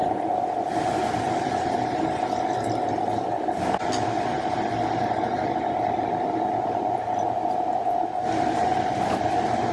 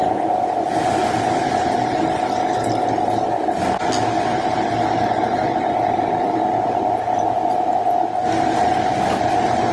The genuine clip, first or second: second